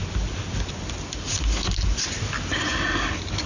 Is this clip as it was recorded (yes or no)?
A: yes